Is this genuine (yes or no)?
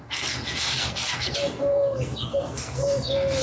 no